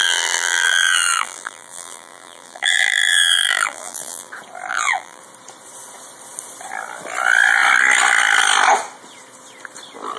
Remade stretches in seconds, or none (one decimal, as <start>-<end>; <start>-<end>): 0.0-4.3; 4.7-5.2